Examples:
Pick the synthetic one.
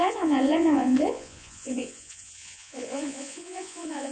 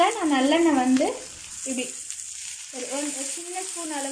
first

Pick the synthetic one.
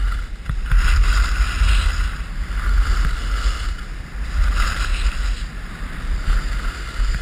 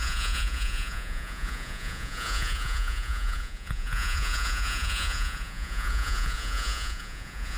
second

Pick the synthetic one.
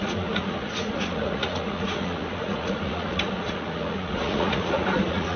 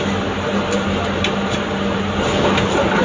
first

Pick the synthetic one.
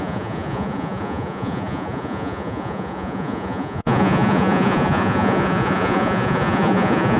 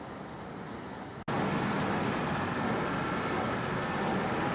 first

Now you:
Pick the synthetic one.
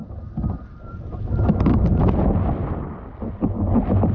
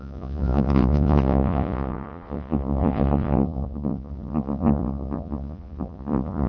second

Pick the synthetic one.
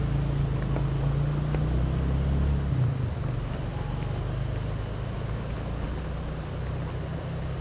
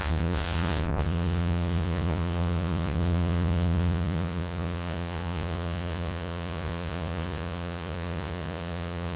second